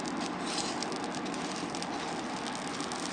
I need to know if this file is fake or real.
real